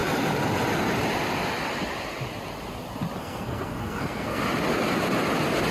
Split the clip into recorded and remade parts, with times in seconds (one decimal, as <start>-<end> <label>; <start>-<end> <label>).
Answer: 0.0-3.2 recorded; 3.2-4.4 remade; 4.4-5.7 recorded